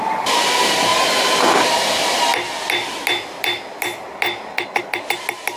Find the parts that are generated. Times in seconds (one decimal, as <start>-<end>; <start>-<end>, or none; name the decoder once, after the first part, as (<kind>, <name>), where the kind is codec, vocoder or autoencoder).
none